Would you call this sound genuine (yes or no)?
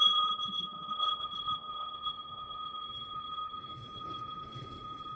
no